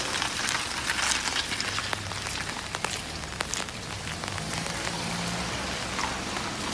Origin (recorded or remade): recorded